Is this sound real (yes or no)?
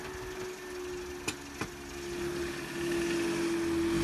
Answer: yes